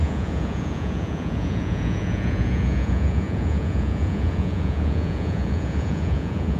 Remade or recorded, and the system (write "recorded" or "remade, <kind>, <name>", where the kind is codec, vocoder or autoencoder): remade, vocoder, Vocos